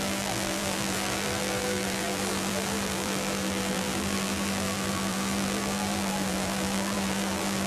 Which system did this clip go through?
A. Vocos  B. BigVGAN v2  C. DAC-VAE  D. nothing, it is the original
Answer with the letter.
B